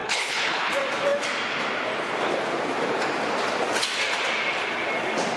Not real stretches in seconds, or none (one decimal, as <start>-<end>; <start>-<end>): 0.0-0.7